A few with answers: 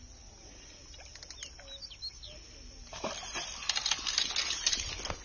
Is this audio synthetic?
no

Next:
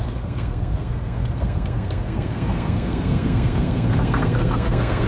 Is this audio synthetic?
yes